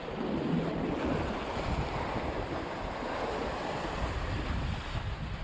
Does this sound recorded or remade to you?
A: recorded